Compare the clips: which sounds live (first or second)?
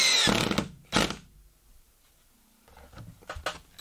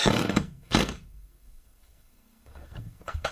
first